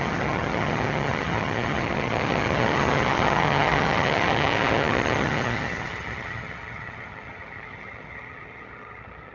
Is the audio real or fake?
fake